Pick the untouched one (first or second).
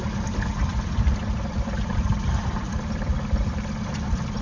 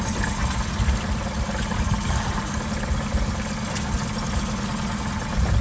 second